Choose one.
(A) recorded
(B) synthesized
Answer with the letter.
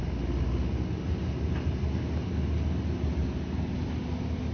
A